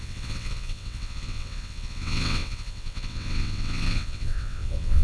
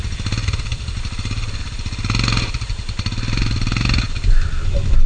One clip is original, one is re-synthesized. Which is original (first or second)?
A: second